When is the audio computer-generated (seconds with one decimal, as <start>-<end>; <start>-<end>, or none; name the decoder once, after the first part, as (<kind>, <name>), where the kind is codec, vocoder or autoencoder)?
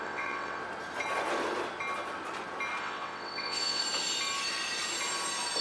0.0-0.6 (vocoder, WaveNeXt); 2.8-3.8